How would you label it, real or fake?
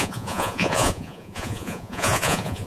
fake